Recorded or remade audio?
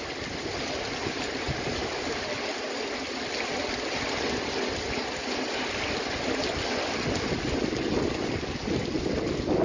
recorded